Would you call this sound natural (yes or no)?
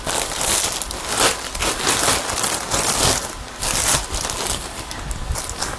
yes